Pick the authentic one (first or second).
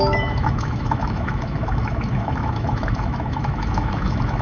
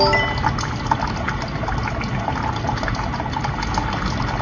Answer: second